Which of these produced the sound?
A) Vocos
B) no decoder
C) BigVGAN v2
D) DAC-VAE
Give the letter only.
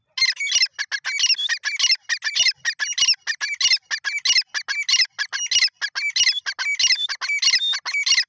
B